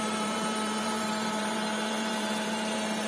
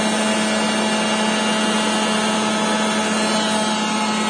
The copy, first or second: first